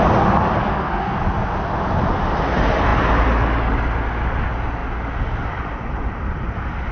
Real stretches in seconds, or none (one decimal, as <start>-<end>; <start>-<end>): 0.0-0.7; 1.2-6.9

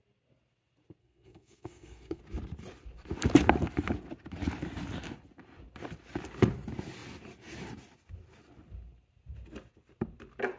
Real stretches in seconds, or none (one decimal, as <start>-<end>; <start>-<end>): 0.0-1.0; 2.2-10.6

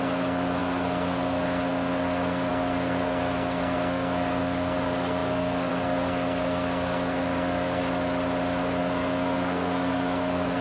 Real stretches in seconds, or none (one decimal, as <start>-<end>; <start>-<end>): 7.8-8.8

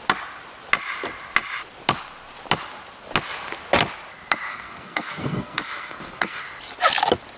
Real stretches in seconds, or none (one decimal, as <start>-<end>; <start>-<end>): 0.0-4.5; 6.4-7.4

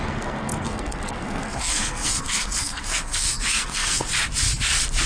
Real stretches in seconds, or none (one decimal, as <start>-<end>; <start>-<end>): 4.1-5.1

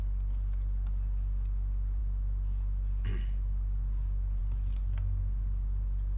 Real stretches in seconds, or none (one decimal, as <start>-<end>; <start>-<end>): 0.0-6.2

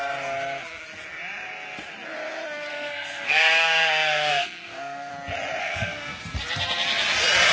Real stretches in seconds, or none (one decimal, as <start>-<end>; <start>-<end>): 0.0-2.7; 5.1-5.6; 6.2-7.5

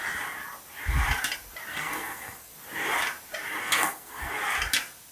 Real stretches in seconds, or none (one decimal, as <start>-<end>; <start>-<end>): 0.0-1.7; 2.5-3.6; 4.4-5.1